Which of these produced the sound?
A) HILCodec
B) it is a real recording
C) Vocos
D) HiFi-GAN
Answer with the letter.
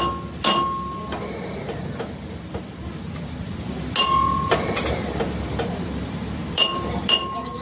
B